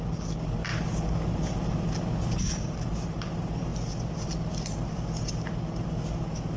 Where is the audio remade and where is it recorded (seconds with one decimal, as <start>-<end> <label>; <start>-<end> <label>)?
0.0-3.7 recorded; 3.7-6.6 remade